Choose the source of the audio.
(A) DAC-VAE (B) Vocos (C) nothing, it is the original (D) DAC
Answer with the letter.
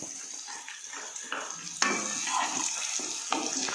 C